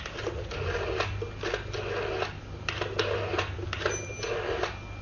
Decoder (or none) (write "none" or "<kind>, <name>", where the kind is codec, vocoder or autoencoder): none